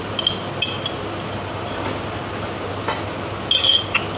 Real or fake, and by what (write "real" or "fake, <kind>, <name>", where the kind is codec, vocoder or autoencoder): real